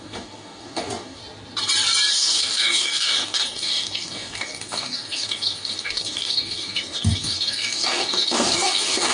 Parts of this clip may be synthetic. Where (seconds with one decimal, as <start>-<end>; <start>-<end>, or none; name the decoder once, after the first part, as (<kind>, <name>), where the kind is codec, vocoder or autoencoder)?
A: 0.0-1.2 (codec, DAC); 2.1-9.1